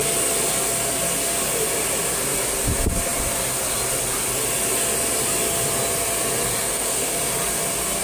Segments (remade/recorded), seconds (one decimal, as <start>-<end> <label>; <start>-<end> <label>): 0.0-6.6 recorded; 6.6-7.2 remade; 7.2-8.0 recorded